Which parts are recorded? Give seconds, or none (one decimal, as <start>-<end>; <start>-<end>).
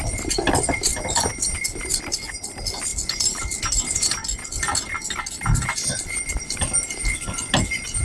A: 0.0-8.0